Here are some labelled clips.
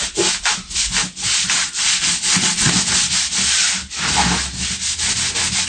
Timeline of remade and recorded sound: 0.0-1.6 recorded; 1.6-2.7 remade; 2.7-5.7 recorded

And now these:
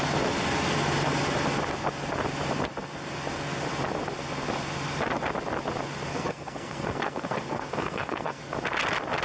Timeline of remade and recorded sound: 0.0-6.1 recorded; 6.1-8.4 remade; 8.4-9.2 recorded